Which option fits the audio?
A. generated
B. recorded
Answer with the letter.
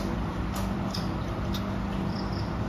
A